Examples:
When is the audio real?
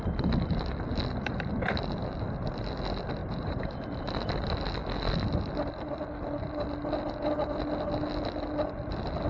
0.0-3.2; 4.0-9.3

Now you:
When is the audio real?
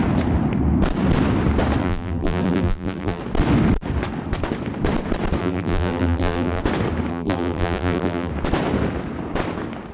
0.0-1.8; 3.2-5.4; 6.6-7.1; 8.3-9.9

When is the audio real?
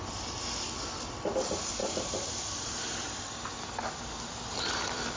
0.0-1.8; 2.8-5.2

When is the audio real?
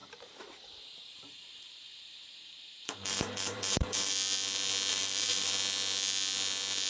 4.1-4.9; 5.5-6.9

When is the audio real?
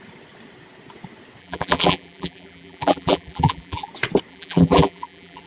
0.0-1.4; 3.9-4.3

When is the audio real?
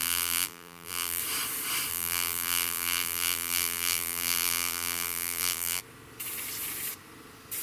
1.2-1.9; 5.8-7.6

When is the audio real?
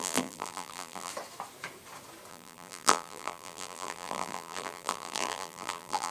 1.1-2.3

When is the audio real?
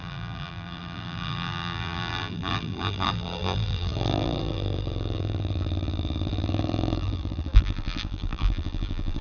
none